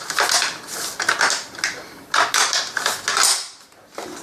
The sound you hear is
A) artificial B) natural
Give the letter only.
B